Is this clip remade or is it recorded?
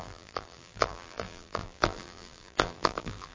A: remade